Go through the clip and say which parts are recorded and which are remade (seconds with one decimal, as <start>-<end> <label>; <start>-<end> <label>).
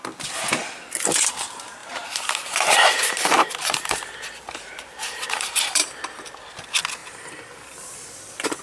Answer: 0.0-1.8 recorded; 1.8-5.9 remade; 5.9-8.6 recorded